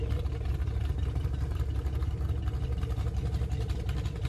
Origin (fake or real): real